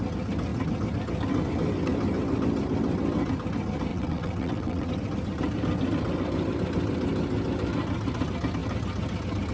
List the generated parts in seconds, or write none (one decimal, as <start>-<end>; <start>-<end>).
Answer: 3.9-4.9